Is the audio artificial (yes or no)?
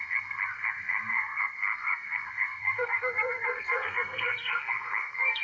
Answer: yes